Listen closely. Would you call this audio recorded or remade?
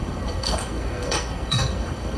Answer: remade